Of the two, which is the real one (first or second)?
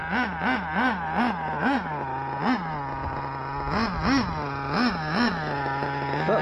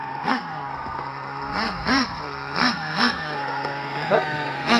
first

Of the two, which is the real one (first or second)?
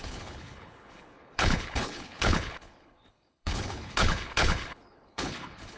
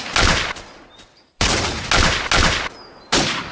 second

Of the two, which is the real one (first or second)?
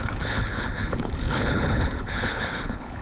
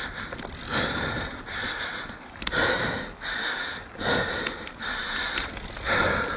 second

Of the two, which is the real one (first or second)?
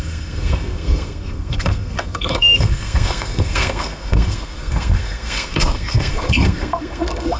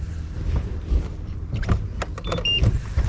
second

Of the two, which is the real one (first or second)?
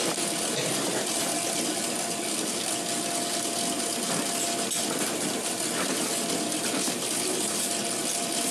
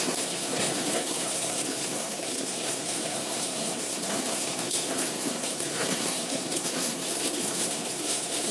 first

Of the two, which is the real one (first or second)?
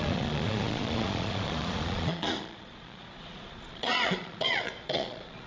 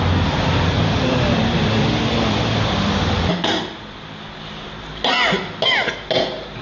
second